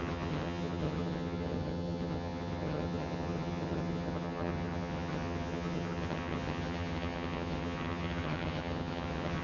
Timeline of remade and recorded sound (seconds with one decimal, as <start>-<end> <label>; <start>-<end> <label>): 0.0-9.4 remade